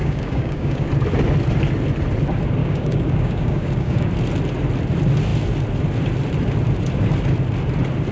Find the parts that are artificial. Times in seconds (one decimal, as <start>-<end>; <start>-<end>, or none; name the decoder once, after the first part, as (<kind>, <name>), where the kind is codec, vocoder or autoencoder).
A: 0.0-0.9 (codec, DAC); 2.6-4.1